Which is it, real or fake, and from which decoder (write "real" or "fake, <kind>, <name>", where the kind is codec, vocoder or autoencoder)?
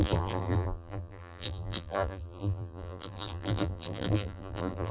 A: fake, vocoder, BigVGAN v2